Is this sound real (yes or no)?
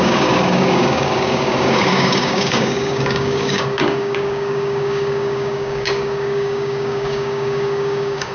no